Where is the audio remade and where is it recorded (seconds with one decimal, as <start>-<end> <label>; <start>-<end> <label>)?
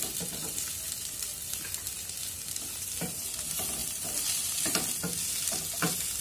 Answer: 0.0-3.8 recorded; 3.8-4.8 remade; 4.8-6.2 recorded